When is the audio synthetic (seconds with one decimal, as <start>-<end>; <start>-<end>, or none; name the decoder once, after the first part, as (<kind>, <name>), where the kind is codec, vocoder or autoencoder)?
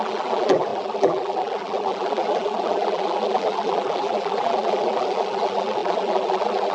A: 0.0-6.7 (vocoder, BigVGAN v2)